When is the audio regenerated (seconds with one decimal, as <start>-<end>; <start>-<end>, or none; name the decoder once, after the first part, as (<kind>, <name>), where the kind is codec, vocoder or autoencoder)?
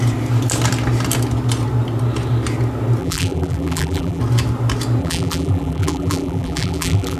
3.0-4.2 (vocoder, BigVGAN v2); 5.0-7.2